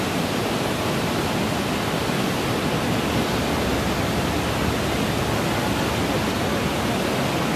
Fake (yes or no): no